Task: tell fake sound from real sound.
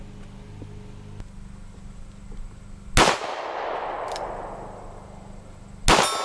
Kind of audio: real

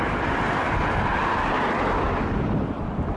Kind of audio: real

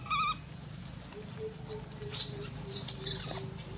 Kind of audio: real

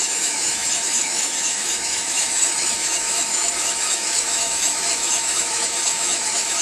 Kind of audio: fake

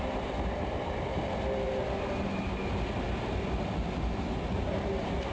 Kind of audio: real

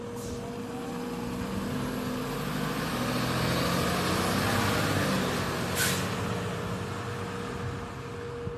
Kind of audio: real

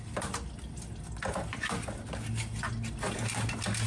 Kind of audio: real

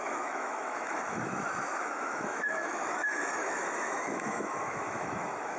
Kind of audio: fake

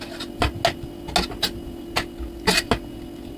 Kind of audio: real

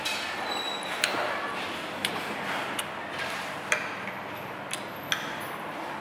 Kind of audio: real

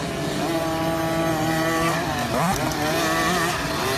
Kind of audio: real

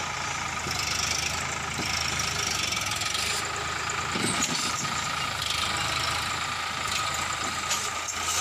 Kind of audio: real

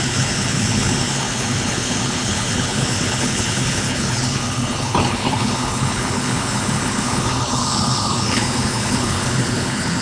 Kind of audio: fake